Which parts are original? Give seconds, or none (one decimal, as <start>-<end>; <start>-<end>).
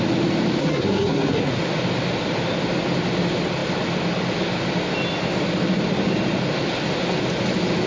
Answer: 0.0-0.6; 1.5-7.9